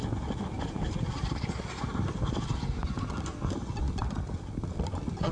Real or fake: real